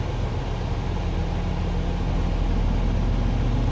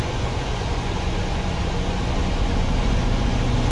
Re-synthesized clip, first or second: second